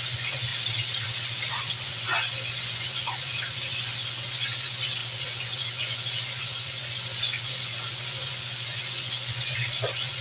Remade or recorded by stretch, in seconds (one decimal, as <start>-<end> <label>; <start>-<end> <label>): 0.0-0.5 remade; 0.5-1.5 recorded; 1.5-10.2 remade